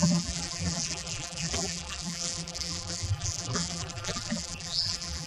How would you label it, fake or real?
fake